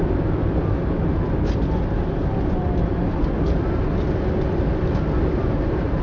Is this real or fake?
real